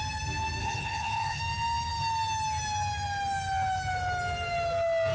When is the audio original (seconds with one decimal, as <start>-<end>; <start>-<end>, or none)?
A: 0.0-0.6; 1.4-5.1